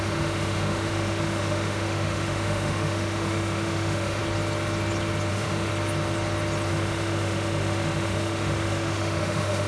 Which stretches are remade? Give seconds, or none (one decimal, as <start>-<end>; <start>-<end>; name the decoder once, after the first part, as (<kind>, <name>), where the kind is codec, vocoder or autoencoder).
0.0-4.2 (autoencoder, DAC-VAE); 5.3-5.7; 6.7-9.7

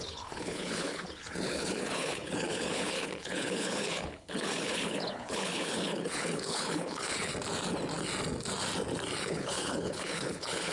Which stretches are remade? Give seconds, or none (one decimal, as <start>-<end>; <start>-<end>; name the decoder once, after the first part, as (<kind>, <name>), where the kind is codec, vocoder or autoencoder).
0.0-7.3 (codec, HILCodec); 9.2-10.7

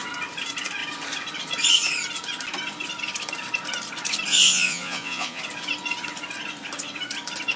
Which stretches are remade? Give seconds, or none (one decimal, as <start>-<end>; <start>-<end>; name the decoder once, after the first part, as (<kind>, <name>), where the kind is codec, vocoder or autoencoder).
4.3-5.4 (vocoder, Vocos)

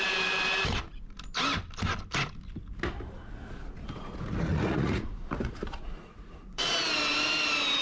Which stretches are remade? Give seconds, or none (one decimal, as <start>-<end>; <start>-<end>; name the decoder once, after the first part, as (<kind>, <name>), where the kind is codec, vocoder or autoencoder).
3.6-6.7 (vocoder, Vocos)

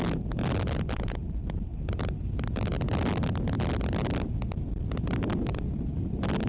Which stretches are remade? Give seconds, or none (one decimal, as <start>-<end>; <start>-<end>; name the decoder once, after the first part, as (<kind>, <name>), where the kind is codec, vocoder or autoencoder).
none

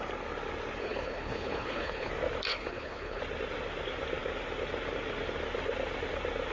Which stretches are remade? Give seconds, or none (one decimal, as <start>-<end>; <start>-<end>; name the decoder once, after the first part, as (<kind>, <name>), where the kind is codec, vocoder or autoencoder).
0.8-2.1 (codec, HILCodec); 2.5-3.2

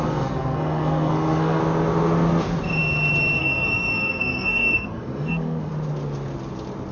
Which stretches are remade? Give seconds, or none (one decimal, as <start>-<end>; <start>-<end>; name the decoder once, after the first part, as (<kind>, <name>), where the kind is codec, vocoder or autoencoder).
0.0-1.6 (codec, SNAC); 3.4-5.7

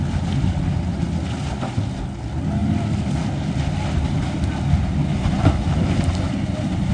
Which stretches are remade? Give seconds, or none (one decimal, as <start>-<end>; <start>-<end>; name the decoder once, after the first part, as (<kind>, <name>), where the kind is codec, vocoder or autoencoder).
none